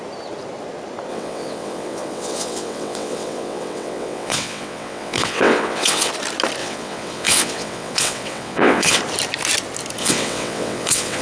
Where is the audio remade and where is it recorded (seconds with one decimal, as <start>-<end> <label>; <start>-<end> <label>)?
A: 0.0-1.1 recorded; 1.1-6.1 remade; 6.1-6.6 recorded; 6.6-9.0 remade; 9.0-10.0 recorded; 10.0-11.2 remade